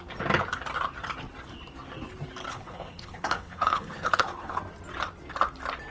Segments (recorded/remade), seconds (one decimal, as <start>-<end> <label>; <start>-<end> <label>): 0.0-2.5 recorded; 2.5-4.6 remade; 4.6-5.9 recorded